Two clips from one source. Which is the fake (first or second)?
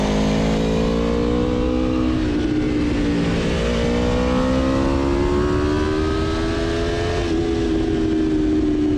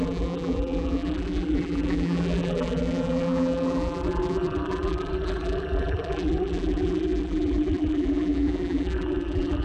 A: second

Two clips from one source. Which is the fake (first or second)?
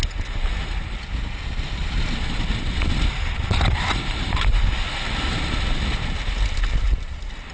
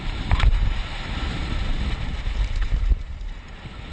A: second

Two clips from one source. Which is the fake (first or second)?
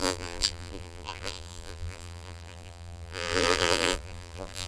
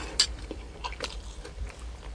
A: first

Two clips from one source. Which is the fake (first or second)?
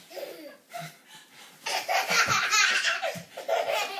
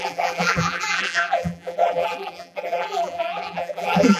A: second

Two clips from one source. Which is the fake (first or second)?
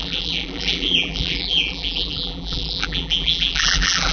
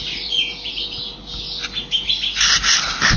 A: first